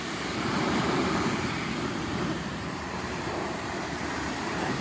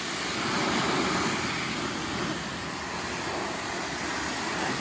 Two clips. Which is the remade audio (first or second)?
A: first